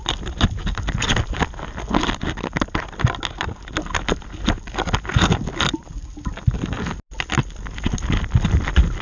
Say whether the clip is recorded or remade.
recorded